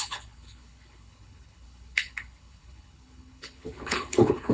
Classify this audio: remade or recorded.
remade